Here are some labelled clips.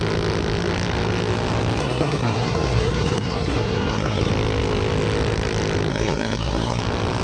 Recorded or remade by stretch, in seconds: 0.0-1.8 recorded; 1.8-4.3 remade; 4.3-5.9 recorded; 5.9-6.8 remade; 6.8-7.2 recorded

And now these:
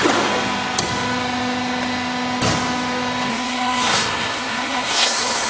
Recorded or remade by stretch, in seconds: 0.0-3.3 recorded; 3.3-5.5 remade